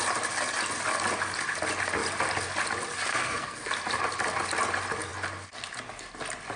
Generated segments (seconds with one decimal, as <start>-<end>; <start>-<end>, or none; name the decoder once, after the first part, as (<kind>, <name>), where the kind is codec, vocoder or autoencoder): 3.1-3.7 (codec, SNAC)